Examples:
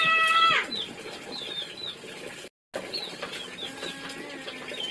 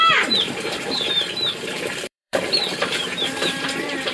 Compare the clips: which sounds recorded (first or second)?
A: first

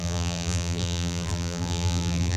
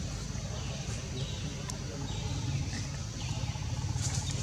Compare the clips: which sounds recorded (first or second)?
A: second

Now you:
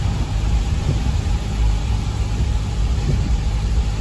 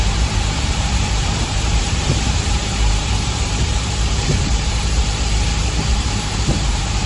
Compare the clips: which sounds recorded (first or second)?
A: first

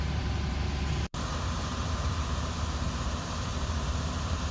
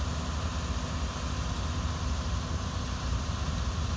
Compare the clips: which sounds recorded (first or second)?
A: second